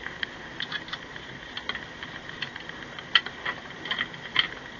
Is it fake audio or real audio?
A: real